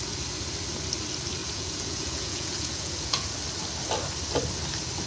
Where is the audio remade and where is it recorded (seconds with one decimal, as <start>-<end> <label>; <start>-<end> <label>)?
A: 0.0-1.4 recorded; 1.4-3.3 remade; 3.3-5.1 recorded